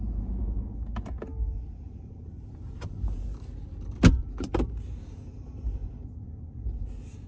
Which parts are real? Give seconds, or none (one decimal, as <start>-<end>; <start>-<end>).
0.0-7.3